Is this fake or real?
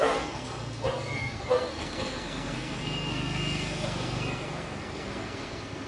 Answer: fake